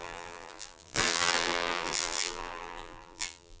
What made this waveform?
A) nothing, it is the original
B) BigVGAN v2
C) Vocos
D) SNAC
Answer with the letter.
B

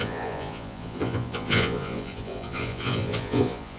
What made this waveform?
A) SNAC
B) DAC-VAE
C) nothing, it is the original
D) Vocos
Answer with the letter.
D